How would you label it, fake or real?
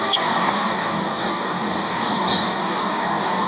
fake